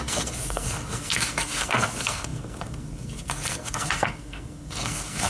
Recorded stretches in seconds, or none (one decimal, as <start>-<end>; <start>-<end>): none